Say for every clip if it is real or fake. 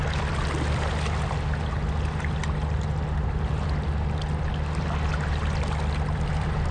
real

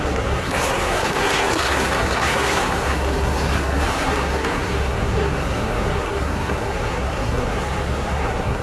fake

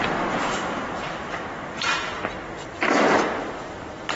real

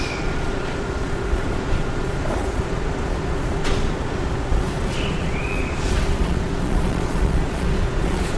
fake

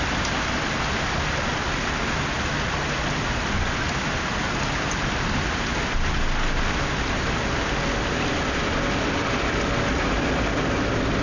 real